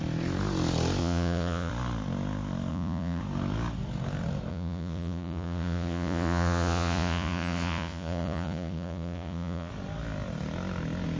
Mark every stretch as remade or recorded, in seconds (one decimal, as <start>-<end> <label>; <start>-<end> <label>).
0.0-1.0 recorded; 1.0-1.7 remade; 1.7-2.7 recorded; 2.7-3.2 remade; 3.2-4.5 recorded; 4.5-9.7 remade; 9.7-11.2 recorded